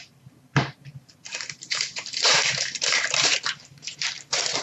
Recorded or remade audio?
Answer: remade